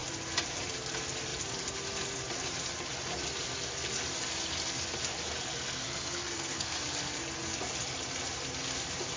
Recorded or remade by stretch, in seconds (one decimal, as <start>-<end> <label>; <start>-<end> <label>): 0.0-5.5 recorded; 5.5-6.8 remade; 6.8-9.2 recorded